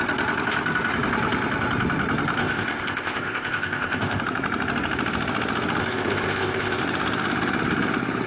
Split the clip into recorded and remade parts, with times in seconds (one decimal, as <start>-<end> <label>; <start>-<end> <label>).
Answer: 0.0-2.4 recorded; 2.4-4.2 remade; 4.2-5.8 recorded; 5.8-6.8 remade; 6.8-8.3 recorded